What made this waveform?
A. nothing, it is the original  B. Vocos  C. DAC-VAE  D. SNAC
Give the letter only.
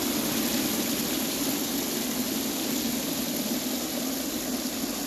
A